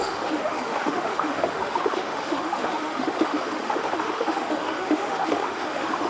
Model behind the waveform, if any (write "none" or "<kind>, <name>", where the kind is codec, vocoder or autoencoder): autoencoder, DAC-VAE